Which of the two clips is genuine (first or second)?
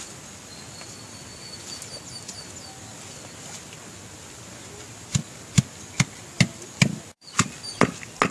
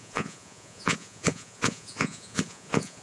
first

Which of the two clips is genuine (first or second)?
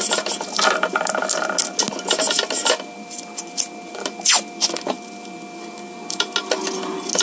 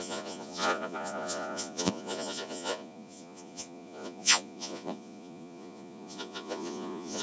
first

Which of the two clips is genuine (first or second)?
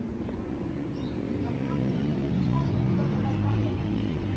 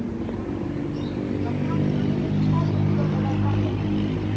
second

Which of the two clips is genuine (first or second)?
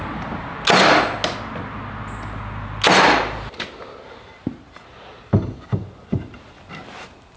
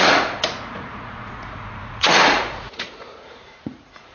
first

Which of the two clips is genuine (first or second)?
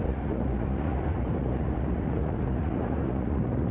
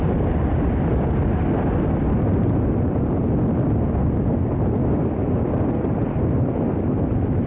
second